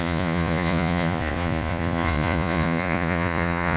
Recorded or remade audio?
remade